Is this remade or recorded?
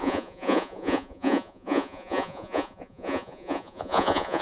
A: remade